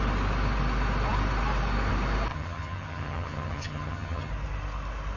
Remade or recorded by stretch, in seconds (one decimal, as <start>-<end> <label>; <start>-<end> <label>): 0.0-2.3 recorded; 2.3-4.3 remade; 4.3-5.2 recorded